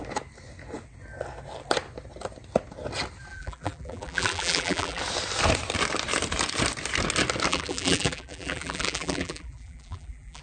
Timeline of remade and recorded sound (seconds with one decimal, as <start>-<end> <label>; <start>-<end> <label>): 0.0-3.3 recorded; 3.3-5.0 remade; 5.0-7.5 recorded; 7.5-10.4 remade